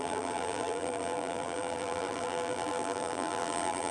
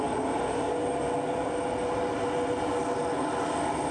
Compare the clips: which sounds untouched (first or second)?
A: second